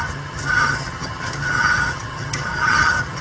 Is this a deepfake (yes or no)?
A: yes